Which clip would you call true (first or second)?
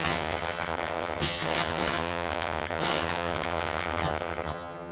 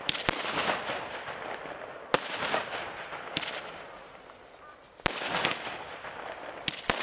second